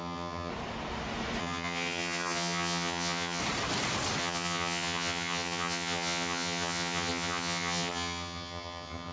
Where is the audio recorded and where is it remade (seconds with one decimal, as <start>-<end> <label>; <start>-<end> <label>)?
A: 0.0-0.5 remade; 0.5-1.4 recorded; 1.4-3.4 remade; 3.4-4.2 recorded; 4.2-9.1 remade